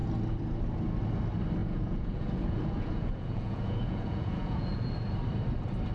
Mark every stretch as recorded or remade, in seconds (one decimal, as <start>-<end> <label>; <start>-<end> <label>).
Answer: 0.0-1.6 recorded; 1.6-4.9 remade; 4.9-5.9 recorded